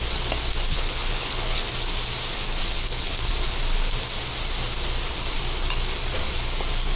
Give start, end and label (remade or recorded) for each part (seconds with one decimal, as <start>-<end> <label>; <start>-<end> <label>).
0.0-0.7 recorded; 0.7-1.7 remade; 1.7-2.6 recorded; 2.6-3.3 remade; 3.3-7.0 recorded